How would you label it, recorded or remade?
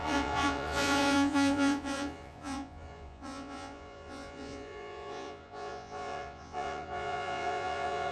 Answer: remade